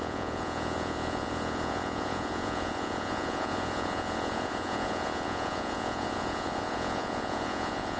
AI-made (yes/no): yes